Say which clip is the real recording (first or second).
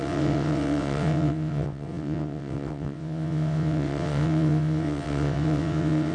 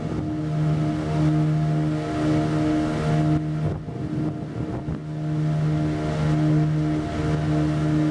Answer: second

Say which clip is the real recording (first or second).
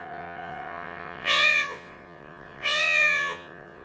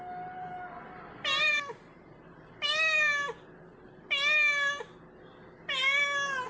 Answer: second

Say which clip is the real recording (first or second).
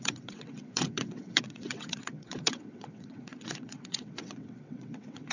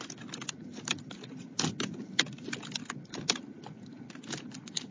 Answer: second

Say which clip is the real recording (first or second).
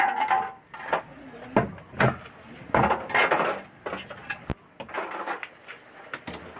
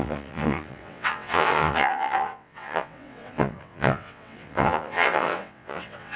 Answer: first